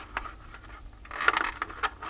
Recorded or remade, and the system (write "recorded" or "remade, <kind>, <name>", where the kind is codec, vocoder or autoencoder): recorded